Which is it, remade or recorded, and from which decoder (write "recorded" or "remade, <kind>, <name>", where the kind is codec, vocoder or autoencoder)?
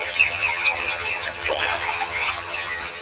remade, vocoder, HiFi-GAN